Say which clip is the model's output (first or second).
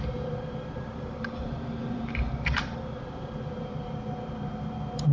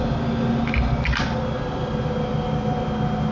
first